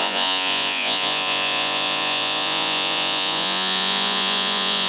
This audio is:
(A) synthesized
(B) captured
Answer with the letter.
A